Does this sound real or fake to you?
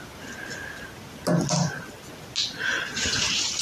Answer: real